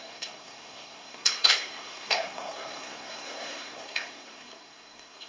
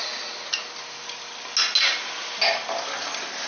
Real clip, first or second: second